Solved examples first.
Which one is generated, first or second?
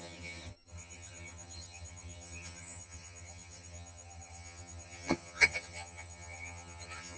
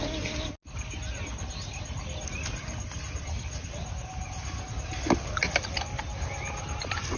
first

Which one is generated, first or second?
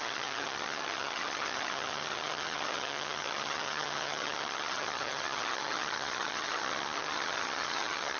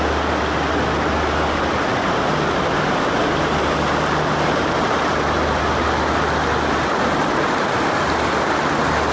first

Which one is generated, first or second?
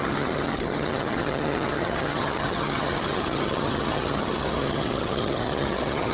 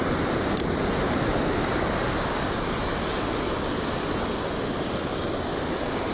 first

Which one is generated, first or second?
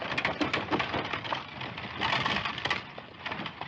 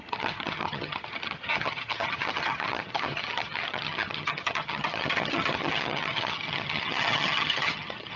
second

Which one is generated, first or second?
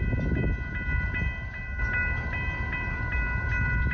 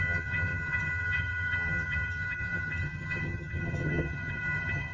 second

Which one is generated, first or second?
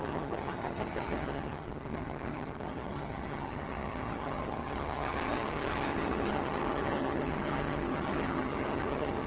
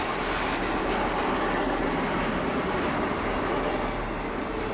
first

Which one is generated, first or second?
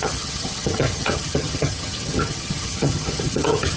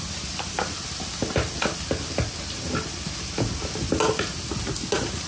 first